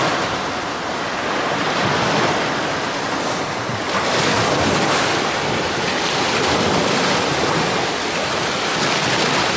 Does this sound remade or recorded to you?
recorded